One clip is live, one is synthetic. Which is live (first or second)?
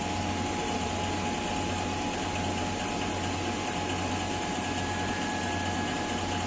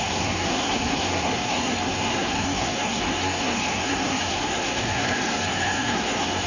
first